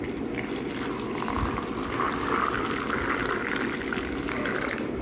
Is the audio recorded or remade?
recorded